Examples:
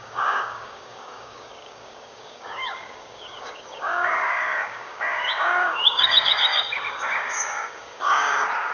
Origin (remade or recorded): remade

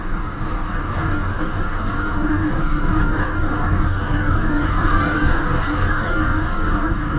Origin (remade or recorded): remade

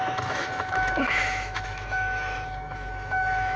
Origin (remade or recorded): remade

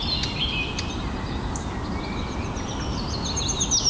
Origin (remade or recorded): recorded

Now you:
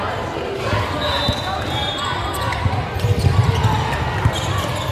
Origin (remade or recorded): recorded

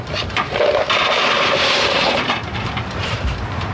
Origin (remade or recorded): remade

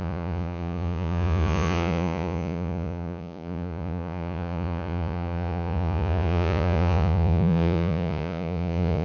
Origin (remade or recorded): remade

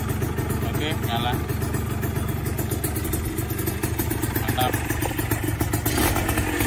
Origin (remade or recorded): recorded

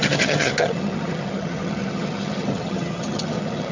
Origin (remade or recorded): remade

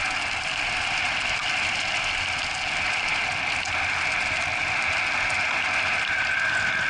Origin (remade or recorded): recorded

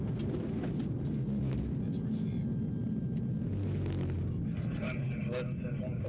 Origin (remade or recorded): recorded